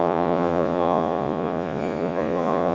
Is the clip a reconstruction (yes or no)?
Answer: yes